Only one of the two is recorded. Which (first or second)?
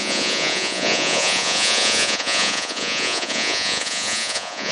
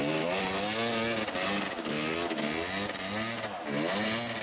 second